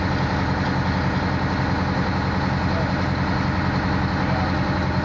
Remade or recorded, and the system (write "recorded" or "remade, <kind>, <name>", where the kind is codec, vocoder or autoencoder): recorded